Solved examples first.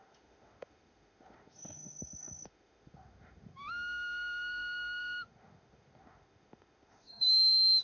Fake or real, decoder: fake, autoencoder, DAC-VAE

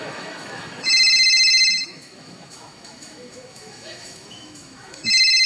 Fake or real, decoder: fake, autoencoder, DAC-VAE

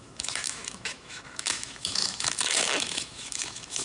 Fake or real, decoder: fake, autoencoder, DAC-VAE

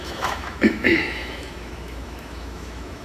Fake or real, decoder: fake, autoencoder, DAC-VAE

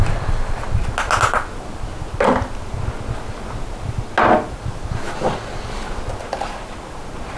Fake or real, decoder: real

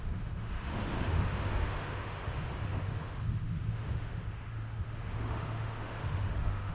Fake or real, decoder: fake, autoencoder, DAC-VAE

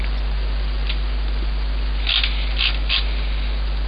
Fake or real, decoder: real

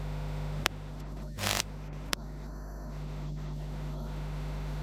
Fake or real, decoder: fake, autoencoder, DAC-VAE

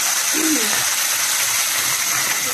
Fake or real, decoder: real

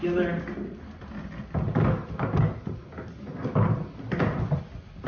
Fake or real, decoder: real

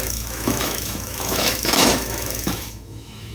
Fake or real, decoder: fake, autoencoder, DAC-VAE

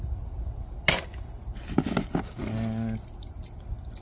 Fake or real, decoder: real